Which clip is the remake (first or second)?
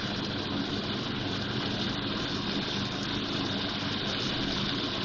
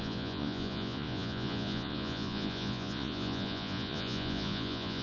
second